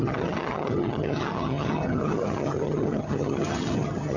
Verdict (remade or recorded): remade